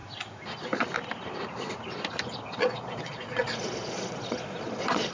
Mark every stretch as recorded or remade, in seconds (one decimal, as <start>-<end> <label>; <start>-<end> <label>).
0.0-2.6 recorded; 2.6-5.1 remade